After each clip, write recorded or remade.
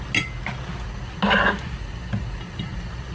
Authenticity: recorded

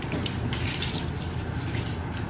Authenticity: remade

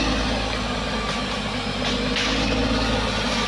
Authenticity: recorded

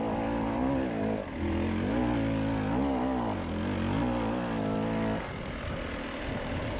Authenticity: recorded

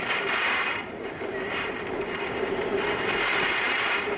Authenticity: remade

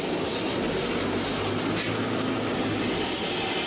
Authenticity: recorded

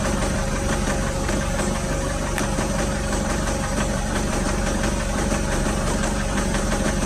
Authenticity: remade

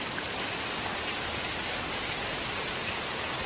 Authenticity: recorded